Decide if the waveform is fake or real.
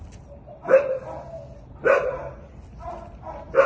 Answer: real